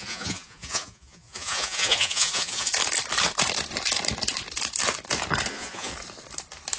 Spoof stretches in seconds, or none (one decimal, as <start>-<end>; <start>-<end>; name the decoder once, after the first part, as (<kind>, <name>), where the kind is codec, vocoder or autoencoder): 0.0-2.7 (vocoder, Vocos); 5.5-5.9